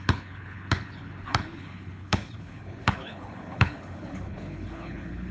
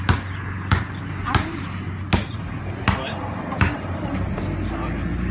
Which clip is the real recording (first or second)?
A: second